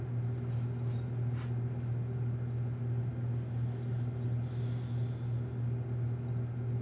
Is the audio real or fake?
real